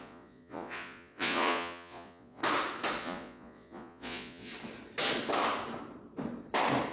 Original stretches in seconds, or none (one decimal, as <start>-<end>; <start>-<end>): 2.4-3.0; 4.5-6.9